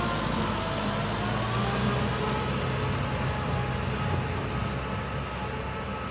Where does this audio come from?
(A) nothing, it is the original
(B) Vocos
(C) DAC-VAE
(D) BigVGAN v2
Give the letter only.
A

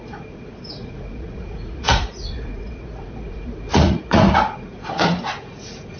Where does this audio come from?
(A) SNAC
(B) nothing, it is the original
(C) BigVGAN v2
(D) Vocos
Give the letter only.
D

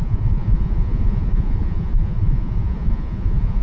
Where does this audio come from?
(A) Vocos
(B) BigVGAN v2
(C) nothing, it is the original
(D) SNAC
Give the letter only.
A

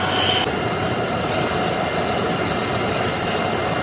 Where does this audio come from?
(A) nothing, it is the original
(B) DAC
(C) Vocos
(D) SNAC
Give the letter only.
A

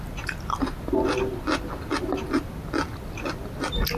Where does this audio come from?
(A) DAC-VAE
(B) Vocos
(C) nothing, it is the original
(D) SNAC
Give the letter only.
C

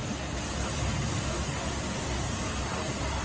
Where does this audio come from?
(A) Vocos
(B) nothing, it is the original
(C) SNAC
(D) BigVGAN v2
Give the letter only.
B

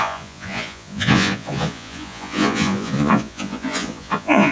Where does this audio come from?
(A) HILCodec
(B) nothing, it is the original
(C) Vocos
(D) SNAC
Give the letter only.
C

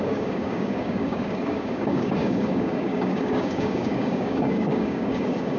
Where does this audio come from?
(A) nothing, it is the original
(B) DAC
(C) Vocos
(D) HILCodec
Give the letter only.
B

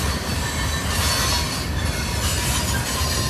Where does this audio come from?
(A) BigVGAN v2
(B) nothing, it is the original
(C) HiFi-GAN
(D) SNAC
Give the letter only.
B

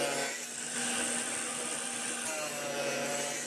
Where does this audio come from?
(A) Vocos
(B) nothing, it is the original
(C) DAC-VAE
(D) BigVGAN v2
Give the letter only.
B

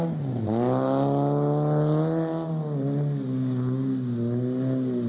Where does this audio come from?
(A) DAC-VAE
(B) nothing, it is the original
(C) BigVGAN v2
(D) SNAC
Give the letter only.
B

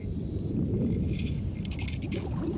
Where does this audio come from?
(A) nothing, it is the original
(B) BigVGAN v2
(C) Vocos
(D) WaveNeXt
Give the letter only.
A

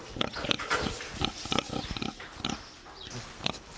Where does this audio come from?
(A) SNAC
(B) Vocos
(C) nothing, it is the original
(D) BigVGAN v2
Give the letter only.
C